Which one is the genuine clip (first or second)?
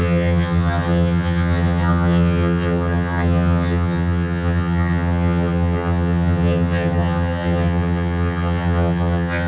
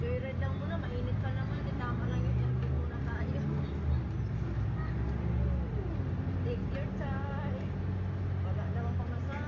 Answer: second